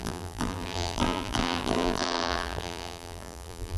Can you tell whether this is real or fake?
fake